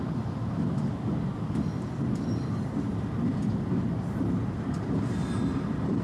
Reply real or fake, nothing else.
fake